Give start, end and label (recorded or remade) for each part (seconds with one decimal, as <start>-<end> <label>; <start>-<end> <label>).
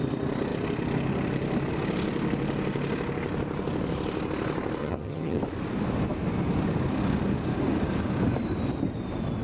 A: 0.0-4.8 recorded; 4.8-5.4 remade; 5.4-9.4 recorded